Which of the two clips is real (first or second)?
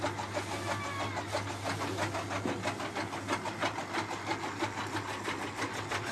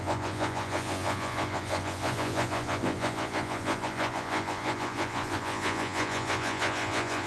first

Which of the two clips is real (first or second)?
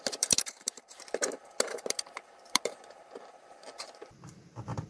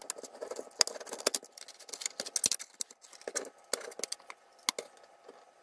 second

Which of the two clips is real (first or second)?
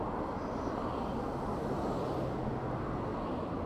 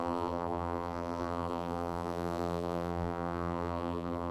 first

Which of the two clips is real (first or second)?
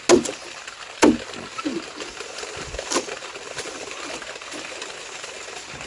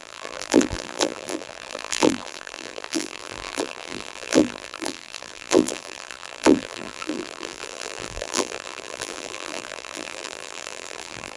first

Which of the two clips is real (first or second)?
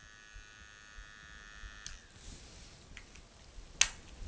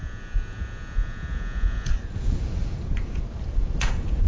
first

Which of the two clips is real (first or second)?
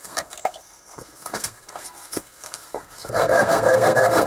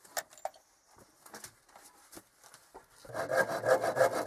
second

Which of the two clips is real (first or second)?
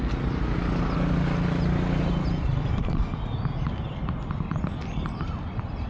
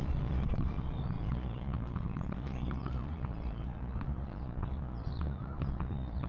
first